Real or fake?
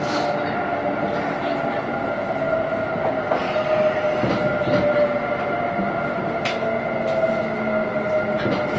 real